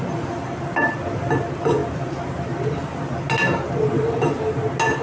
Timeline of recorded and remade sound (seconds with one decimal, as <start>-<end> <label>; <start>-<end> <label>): 0.0-5.0 recorded